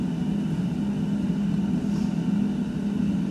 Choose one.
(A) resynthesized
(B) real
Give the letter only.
B